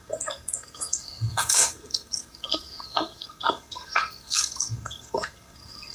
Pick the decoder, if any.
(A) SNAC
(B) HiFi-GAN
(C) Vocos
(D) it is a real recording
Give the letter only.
A